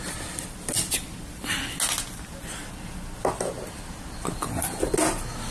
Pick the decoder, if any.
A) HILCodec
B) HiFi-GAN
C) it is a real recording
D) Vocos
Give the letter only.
C